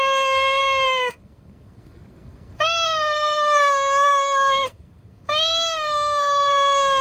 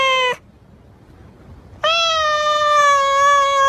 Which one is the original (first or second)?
second